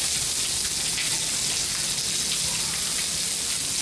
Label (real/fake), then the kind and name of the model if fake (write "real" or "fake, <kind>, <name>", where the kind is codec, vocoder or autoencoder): real